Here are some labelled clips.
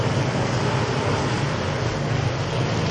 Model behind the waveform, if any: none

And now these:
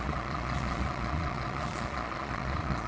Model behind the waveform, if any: vocoder, Vocos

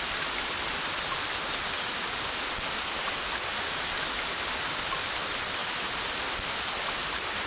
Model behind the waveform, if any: none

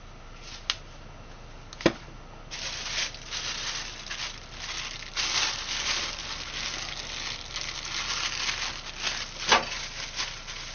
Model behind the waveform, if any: none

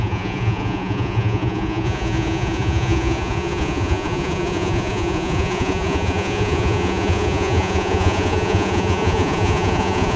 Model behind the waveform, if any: vocoder, Vocos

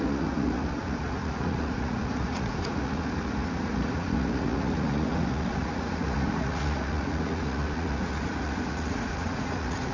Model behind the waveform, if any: vocoder, Vocos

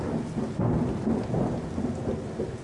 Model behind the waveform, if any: none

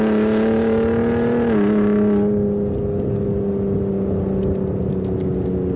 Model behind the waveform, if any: none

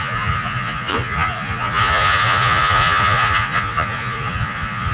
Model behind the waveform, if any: vocoder, Vocos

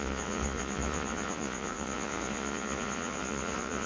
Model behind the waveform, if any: vocoder, Vocos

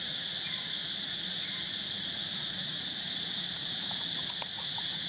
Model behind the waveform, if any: vocoder, Vocos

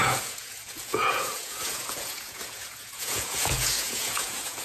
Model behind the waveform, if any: vocoder, Vocos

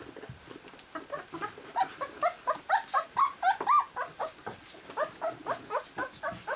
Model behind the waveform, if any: none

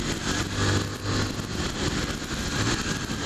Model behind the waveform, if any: none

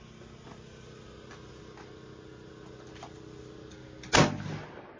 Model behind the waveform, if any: none